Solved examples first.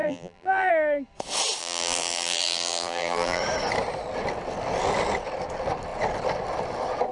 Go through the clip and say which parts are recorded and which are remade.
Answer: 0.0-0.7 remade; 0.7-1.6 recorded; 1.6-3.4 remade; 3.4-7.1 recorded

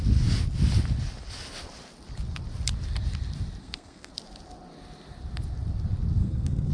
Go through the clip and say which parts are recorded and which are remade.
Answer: 0.0-3.6 recorded; 3.6-4.1 remade; 4.1-6.2 recorded; 6.2-6.7 remade

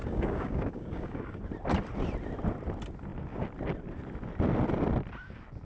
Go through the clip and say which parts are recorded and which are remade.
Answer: 0.0-1.4 remade; 1.4-5.6 recorded

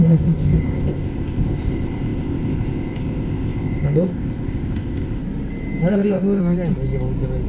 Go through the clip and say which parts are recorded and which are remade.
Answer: 0.0-5.2 remade; 5.2-5.9 recorded; 5.9-6.4 remade; 6.4-7.5 recorded